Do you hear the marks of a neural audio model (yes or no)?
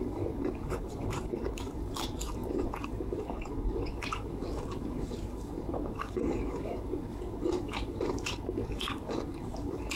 yes